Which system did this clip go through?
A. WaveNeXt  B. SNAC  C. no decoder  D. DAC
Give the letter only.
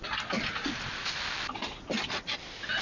C